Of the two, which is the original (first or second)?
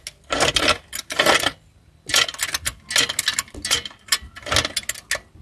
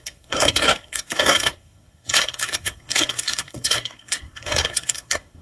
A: first